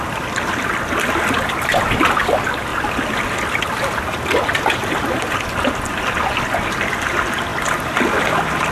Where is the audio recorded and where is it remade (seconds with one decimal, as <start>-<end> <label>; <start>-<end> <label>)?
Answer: 0.0-8.7 recorded